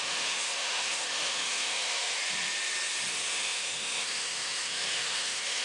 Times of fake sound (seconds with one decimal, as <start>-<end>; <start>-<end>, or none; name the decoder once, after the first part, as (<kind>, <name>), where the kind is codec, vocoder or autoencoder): 0.0-2.2 (autoencoder, DAC-VAE); 3.1-5.6